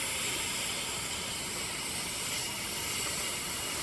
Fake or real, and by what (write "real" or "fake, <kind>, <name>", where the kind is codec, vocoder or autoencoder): fake, vocoder, BigVGAN v2